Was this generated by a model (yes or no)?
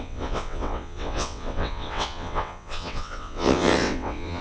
yes